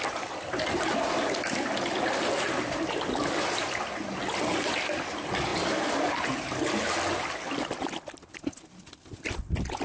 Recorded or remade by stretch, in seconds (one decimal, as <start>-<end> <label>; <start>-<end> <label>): 0.0-9.8 recorded